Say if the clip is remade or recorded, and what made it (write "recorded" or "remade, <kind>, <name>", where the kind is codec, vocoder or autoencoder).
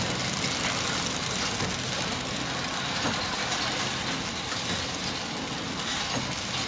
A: recorded